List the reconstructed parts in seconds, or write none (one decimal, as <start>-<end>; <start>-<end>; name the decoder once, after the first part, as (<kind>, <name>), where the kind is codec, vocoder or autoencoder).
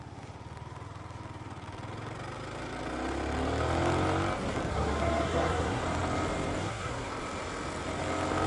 4.7-5.8 (codec, SNAC); 6.6-7.1